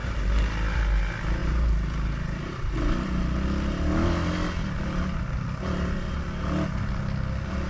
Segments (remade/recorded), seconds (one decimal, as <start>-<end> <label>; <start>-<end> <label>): 0.0-0.8 remade; 0.8-7.7 recorded